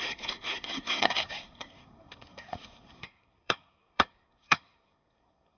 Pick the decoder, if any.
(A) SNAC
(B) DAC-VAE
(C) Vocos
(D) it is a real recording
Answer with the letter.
A